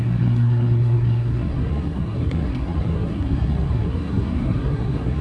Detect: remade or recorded remade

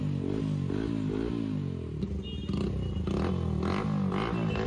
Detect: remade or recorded recorded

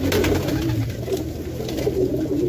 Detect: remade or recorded recorded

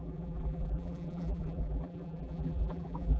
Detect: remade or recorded remade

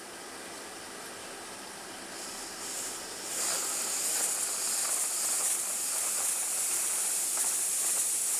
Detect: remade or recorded recorded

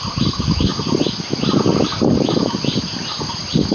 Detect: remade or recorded recorded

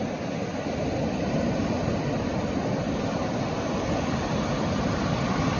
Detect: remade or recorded recorded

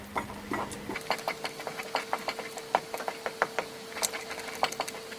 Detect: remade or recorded recorded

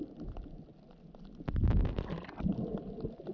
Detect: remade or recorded recorded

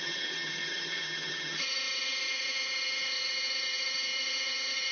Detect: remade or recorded remade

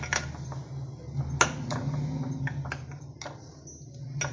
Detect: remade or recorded recorded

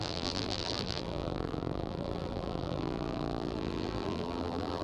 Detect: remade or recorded remade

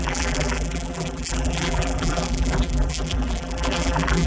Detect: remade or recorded remade